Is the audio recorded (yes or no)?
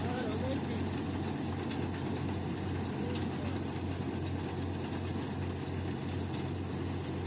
yes